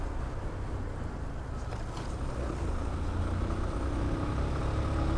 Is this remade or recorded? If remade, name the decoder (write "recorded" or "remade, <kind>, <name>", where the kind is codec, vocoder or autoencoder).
recorded